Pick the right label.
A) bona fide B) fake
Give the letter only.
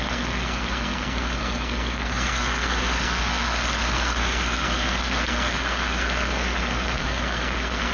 B